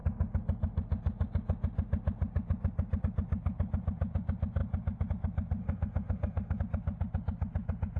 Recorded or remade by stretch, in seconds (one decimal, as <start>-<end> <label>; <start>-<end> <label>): 0.0-5.6 recorded; 5.6-6.6 remade; 6.6-8.0 recorded